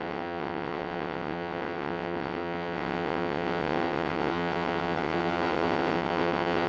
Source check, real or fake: fake